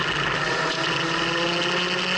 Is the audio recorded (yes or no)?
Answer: yes